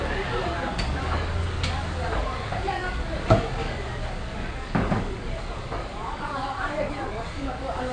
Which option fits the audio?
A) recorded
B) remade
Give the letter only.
B